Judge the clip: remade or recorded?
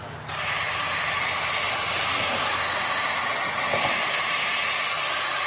recorded